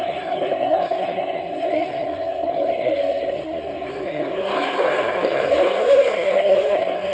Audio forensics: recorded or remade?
remade